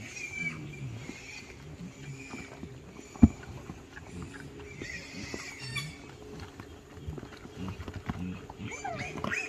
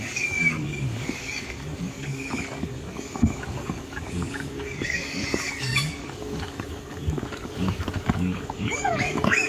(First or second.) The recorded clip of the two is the first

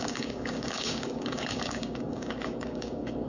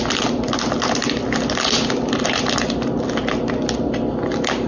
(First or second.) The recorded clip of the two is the second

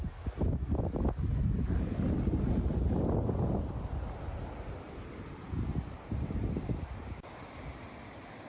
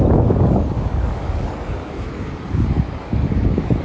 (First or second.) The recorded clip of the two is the first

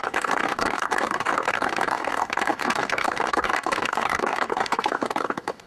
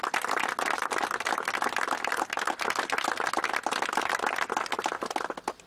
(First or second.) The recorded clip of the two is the second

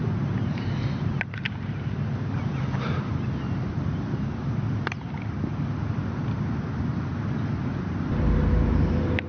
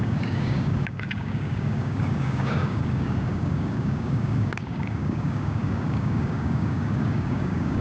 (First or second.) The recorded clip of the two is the first